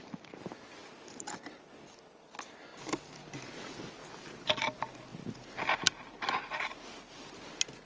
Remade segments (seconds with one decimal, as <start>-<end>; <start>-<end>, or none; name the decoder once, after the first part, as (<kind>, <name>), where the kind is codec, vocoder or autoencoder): 0.8-2.1 (vocoder, BigVGAN v2)